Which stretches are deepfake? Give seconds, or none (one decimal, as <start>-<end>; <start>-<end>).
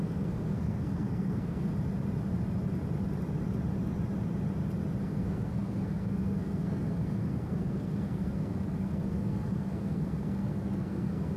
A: 0.0-1.7; 5.0-11.4